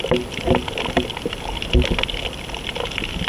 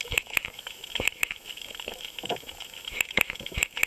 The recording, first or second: first